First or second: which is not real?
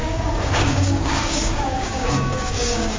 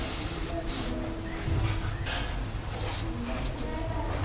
first